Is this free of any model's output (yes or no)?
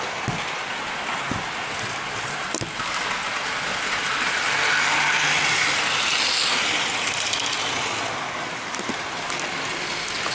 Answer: yes